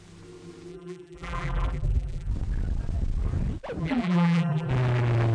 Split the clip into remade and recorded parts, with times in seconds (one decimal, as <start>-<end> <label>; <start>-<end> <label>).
0.0-0.7 recorded; 0.7-2.3 remade; 2.3-3.8 recorded; 3.8-4.7 remade; 4.7-5.3 recorded